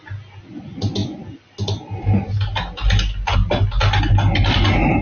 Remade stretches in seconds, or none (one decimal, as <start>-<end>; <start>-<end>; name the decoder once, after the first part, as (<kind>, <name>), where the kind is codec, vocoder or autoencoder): none